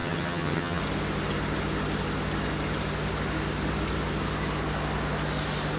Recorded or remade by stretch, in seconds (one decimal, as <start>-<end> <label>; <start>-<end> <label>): 0.0-0.8 remade; 0.8-5.8 recorded